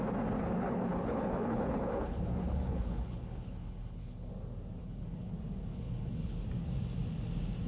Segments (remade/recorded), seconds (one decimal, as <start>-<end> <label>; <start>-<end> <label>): 0.0-0.4 recorded; 0.4-4.3 remade; 4.3-4.8 recorded; 4.8-5.3 remade; 5.3-5.7 recorded; 5.7-6.4 remade; 6.4-7.7 recorded